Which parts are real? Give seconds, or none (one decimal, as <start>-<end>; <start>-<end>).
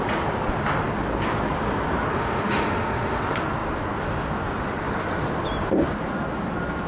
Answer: 0.0-2.1; 3.2-6.9